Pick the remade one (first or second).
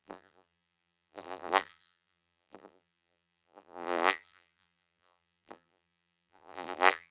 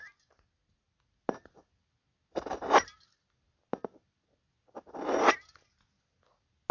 first